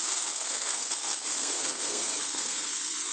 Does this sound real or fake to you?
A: fake